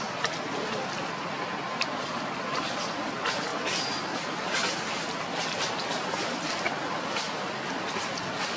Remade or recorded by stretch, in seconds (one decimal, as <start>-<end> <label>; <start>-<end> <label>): 0.0-8.6 recorded